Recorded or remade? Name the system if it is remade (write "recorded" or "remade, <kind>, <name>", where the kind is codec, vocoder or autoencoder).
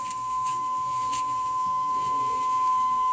remade, codec, SNAC